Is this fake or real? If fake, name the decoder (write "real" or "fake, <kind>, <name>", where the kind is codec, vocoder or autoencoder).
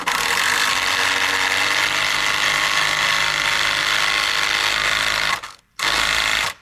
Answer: real